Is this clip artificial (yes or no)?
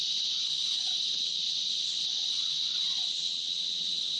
yes